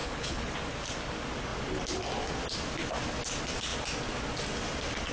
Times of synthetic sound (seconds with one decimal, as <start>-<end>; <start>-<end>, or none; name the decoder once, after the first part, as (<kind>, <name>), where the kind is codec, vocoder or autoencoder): 0.0-0.5 (codec, HILCodec)